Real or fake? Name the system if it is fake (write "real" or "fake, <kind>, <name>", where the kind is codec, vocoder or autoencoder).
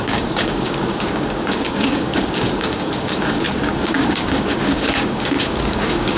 fake, codec, DAC